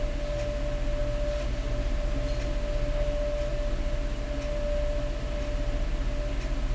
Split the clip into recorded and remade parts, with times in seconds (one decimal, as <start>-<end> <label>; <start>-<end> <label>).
0.0-6.7 recorded